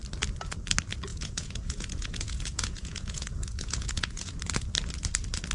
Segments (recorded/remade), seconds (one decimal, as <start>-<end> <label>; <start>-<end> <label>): 0.0-1.1 recorded; 1.1-4.4 remade; 4.4-5.5 recorded